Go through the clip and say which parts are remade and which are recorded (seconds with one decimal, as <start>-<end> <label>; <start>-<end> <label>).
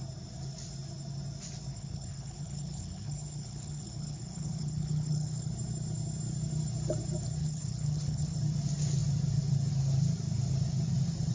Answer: 0.0-1.7 recorded; 1.7-5.5 remade; 5.5-7.4 recorded; 7.4-8.4 remade; 8.4-11.3 recorded